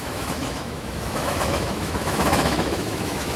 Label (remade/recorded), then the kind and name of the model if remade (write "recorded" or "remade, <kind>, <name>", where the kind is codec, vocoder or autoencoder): remade, autoencoder, DAC-VAE